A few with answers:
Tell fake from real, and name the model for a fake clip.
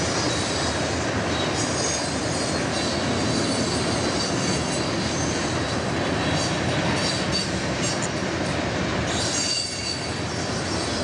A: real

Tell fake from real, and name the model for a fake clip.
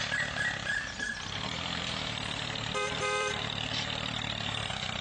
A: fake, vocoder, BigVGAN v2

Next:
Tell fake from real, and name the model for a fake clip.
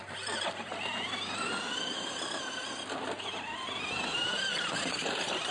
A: real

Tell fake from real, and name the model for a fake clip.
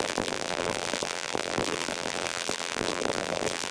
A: fake, vocoder, BigVGAN v2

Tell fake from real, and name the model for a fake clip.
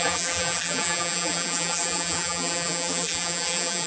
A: fake, vocoder, BigVGAN v2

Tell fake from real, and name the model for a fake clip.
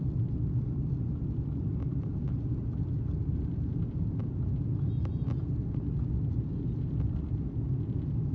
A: real